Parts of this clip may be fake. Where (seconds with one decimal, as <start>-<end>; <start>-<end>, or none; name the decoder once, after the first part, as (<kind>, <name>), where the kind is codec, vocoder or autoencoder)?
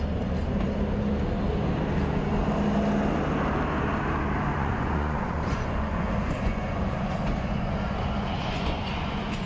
4.5-9.5 (vocoder, Vocos)